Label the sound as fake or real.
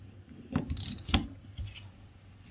real